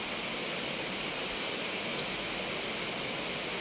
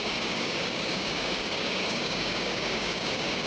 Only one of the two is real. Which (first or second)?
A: first